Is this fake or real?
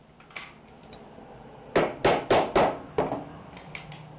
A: real